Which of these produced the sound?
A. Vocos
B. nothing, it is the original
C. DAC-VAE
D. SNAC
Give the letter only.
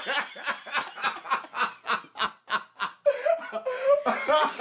B